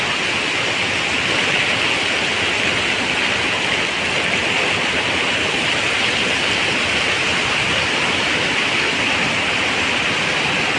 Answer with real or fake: real